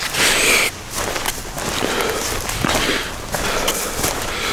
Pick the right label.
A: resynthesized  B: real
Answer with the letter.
B